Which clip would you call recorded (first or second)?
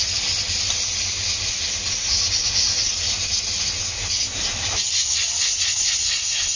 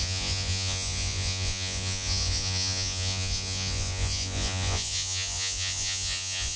first